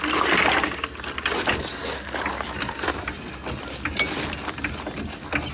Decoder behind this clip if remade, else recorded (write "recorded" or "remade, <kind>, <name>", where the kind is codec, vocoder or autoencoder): recorded